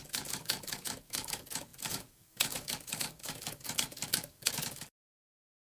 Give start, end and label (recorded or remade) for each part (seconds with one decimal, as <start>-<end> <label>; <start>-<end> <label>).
0.0-5.8 remade